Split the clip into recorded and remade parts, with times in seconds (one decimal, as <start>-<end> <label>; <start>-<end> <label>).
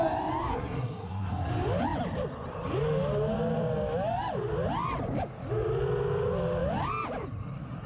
0.0-0.5 recorded; 0.5-1.5 remade; 1.5-7.9 recorded